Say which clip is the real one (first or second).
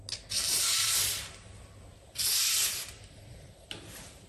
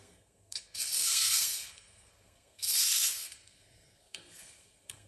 first